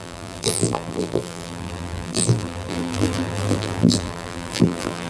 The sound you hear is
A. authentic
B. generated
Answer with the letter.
B